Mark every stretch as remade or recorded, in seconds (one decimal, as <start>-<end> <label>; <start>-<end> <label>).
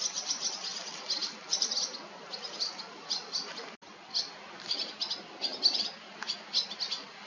0.0-7.3 recorded